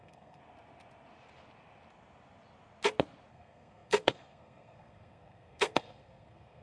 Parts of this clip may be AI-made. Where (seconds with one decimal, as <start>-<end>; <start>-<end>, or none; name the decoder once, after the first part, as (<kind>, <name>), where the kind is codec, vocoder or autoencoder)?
0.0-0.4 (codec, SNAC); 3.3-6.6